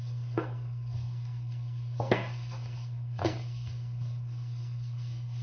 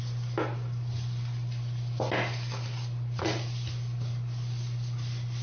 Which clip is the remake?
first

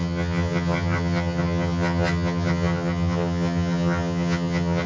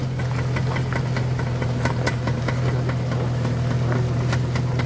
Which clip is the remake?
first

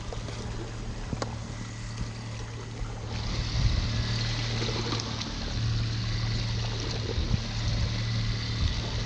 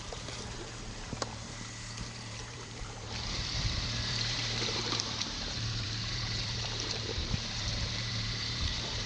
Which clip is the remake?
second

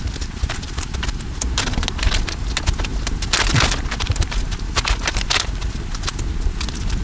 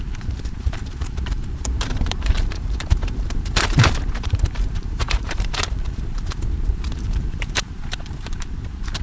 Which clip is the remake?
second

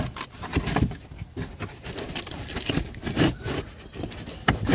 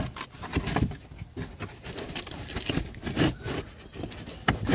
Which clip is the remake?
first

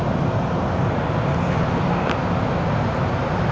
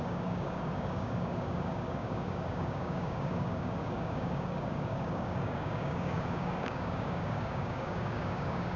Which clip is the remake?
second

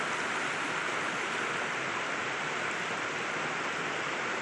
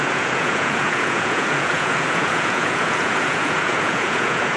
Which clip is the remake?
second